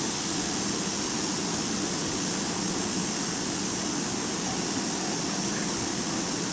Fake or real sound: real